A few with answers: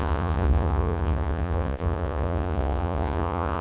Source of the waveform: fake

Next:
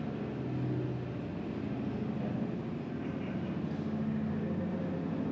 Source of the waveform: real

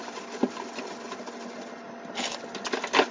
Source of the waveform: real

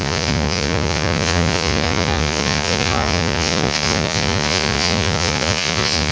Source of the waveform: fake